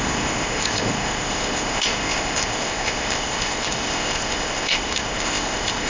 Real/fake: fake